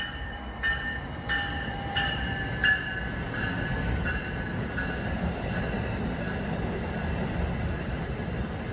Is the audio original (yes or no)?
yes